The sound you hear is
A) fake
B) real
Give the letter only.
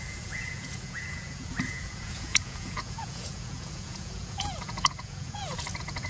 A